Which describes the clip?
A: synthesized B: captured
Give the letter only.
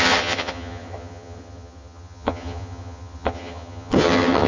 A